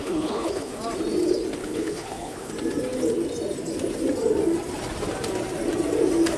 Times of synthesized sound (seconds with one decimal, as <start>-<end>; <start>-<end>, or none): 0.0-0.7; 1.6-2.5